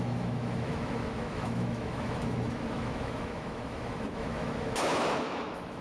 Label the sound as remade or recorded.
remade